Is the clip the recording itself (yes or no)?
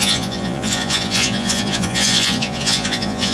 no